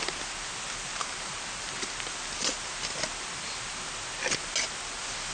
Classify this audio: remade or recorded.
recorded